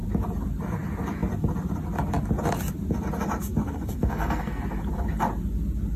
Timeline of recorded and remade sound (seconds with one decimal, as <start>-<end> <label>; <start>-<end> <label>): 0.0-3.6 recorded; 3.6-4.6 remade; 4.6-6.0 recorded